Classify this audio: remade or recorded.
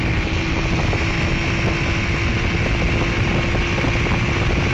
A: recorded